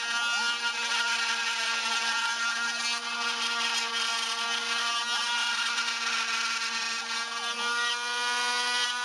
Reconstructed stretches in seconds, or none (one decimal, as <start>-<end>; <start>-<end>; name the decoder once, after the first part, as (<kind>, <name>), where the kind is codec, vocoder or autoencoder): none